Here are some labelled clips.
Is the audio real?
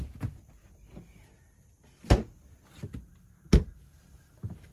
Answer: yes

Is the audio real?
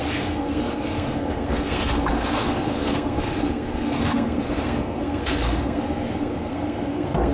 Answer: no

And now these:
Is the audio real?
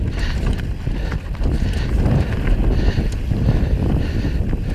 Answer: yes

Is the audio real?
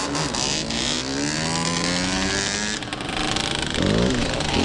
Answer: yes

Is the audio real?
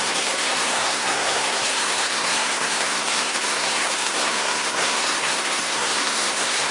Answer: no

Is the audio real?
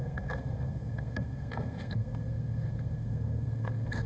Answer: no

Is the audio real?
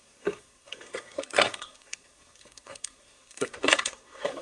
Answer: no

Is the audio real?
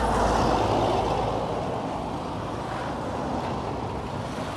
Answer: yes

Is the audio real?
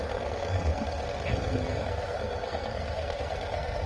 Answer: no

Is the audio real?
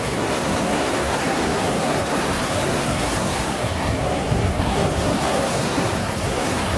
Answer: no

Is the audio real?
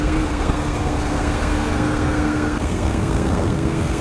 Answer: no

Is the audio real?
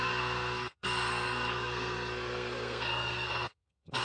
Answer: no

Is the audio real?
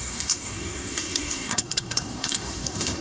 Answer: no